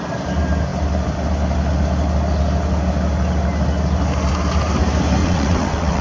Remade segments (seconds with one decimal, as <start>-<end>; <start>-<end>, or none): 5.2-6.0

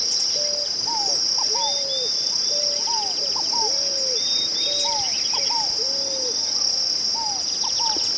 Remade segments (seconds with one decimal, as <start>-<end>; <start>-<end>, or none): none

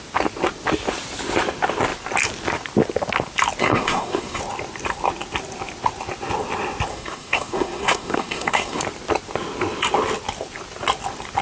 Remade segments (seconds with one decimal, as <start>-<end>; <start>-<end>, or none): 3.6-4.4; 6.9-8.8